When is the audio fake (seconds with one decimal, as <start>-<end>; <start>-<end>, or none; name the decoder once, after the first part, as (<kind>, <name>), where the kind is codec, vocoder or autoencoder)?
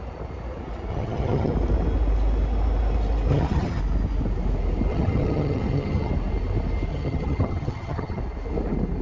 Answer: 0.9-1.5 (vocoder, HiFi-GAN); 3.3-3.8; 4.9-6.1; 6.9-8.2